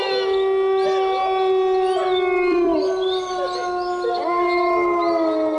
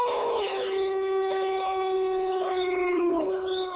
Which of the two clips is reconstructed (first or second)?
second